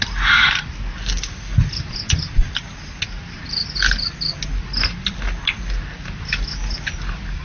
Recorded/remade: recorded